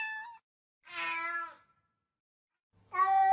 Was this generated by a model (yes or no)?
no